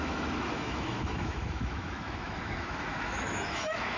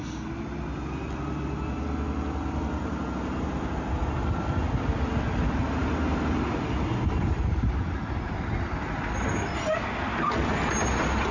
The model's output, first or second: first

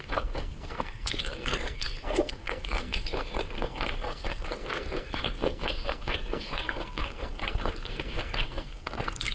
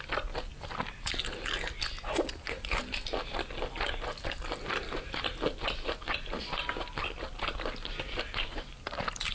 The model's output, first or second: first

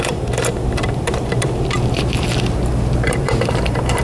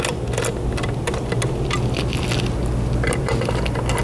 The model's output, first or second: first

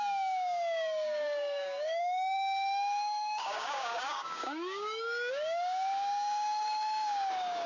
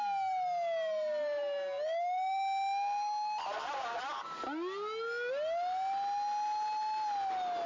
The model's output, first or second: first